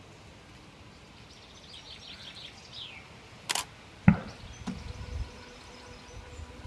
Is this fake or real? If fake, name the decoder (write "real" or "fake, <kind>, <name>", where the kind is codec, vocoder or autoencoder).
real